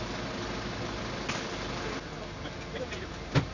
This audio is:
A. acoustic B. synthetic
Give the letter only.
A